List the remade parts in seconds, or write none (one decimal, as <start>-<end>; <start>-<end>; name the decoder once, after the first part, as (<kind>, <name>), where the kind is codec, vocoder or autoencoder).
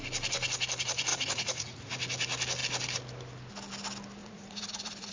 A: 1.1-1.9 (vocoder, Vocos); 4.2-5.1